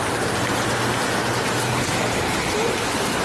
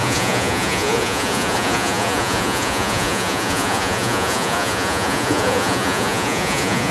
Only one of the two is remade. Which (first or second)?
second